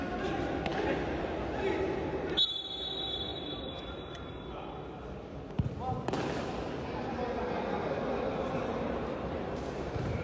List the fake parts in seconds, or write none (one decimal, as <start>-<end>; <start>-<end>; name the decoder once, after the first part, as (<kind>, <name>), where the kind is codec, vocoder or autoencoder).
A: none